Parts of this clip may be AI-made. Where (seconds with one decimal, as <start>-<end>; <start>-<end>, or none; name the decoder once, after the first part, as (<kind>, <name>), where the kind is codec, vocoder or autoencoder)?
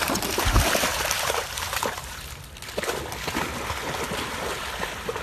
0.9-2.1 (vocoder, BigVGAN v2)